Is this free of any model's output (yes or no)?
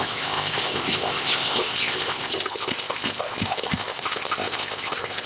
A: no